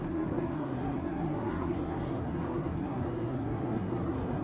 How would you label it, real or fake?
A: fake